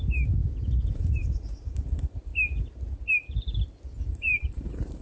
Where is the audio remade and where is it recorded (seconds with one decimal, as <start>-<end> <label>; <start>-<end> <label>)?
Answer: 0.0-0.4 remade; 0.4-0.9 recorded; 0.9-2.3 remade; 2.3-4.1 recorded; 4.1-5.0 remade